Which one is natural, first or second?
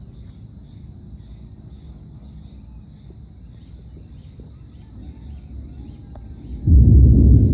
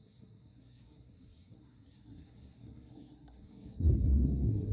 first